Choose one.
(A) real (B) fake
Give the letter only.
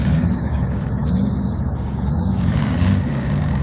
B